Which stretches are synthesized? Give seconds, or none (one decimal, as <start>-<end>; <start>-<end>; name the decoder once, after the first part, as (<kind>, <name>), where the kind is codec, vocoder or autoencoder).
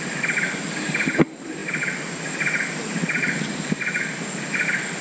none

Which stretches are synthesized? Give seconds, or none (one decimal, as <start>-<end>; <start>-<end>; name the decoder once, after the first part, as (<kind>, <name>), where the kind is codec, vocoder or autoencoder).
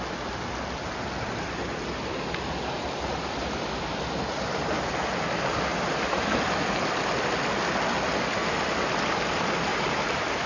9.7-10.5 (vocoder, BigVGAN v2)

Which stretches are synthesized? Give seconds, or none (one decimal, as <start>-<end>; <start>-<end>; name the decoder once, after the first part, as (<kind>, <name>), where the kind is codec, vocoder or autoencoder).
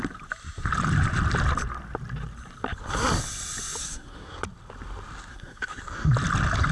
3.8-4.4 (codec, SNAC); 5.3-5.8